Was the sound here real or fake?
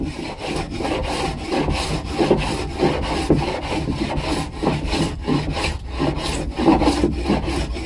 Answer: real